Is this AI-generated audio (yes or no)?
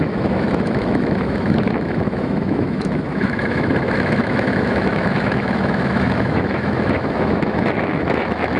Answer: yes